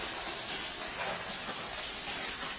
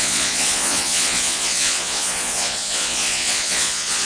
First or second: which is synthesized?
second